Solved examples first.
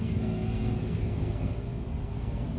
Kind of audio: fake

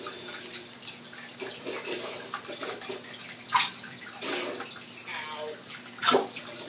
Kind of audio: real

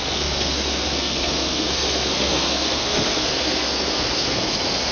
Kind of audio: fake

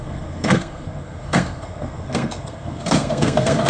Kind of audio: fake